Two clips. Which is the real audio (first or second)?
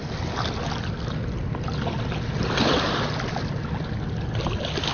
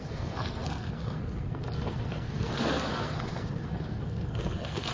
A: first